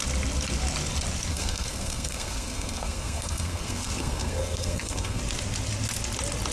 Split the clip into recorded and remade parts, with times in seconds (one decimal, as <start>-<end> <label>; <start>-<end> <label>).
0.0-1.3 recorded; 1.3-5.2 remade; 5.2-6.5 recorded